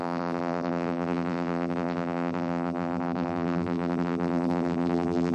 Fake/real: fake